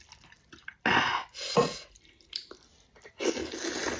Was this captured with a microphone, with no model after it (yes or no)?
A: yes